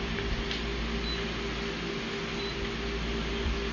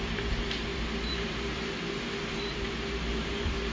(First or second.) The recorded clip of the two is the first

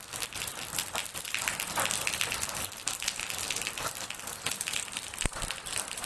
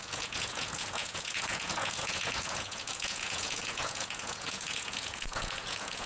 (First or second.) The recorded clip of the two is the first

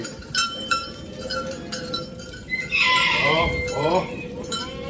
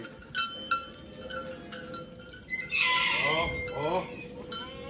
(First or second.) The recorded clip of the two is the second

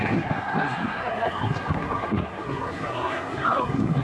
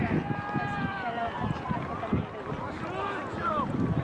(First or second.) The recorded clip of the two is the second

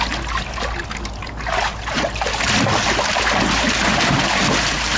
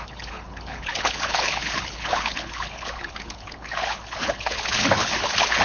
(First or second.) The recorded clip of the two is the first